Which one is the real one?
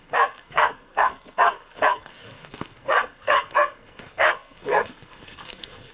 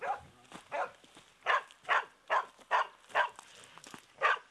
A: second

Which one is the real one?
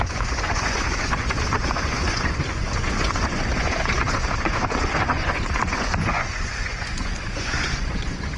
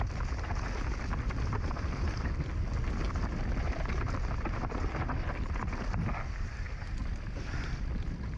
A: second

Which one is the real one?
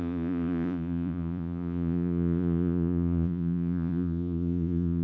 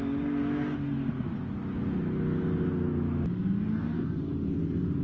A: second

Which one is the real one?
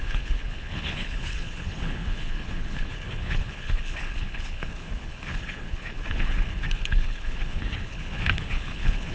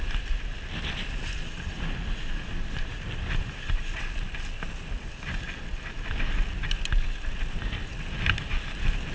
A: second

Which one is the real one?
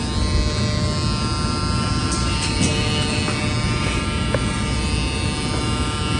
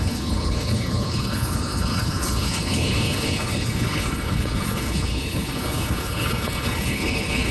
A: first